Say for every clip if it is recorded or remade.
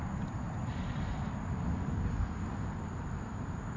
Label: recorded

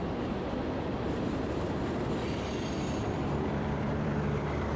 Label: remade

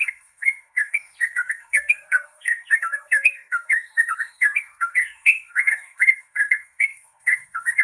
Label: remade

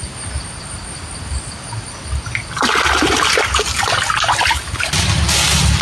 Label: recorded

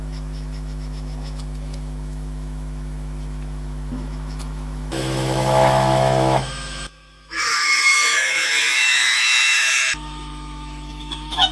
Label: remade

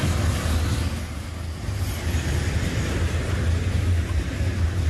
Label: recorded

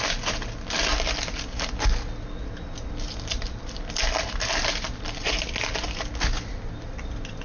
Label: recorded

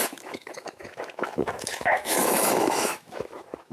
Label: remade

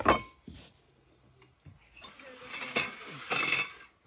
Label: recorded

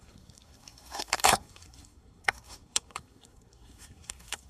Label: remade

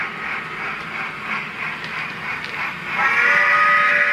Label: recorded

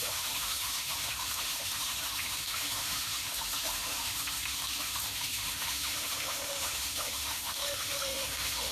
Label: remade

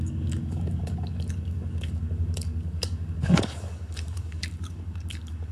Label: remade